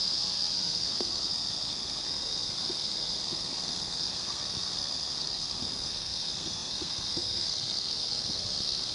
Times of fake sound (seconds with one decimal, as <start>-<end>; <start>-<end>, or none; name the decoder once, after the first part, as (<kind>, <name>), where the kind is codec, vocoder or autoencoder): 0.0-8.9 (codec, SNAC)